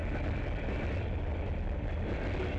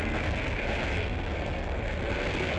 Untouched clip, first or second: first